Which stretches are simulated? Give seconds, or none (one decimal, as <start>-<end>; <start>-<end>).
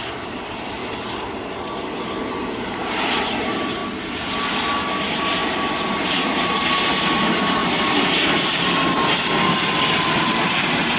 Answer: 0.0-0.8; 2.6-3.8; 4.9-11.0